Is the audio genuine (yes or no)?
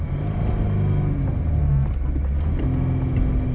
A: yes